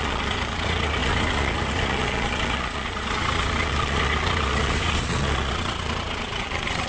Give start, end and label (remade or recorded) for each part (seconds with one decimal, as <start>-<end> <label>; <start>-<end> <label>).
0.0-6.9 remade